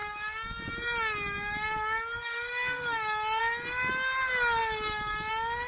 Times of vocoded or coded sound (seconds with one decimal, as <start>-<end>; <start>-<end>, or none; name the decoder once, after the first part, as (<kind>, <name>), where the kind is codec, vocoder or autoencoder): none